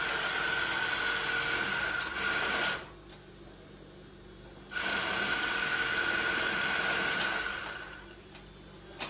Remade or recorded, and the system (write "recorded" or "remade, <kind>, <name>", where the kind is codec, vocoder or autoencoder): recorded